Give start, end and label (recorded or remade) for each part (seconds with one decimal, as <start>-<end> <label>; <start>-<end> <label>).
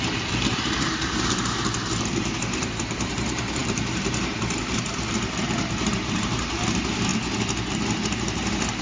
0.0-7.1 remade; 7.1-7.7 recorded; 7.7-8.8 remade